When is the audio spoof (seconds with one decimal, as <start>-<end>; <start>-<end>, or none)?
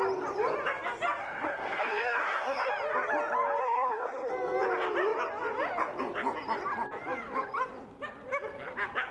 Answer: 1.2-2.7; 3.6-4.3